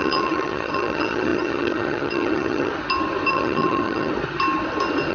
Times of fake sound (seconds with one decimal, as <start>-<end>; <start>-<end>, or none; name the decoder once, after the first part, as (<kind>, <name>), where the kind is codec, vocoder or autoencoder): 0.0-2.7 (vocoder, HiFi-GAN); 3.3-4.1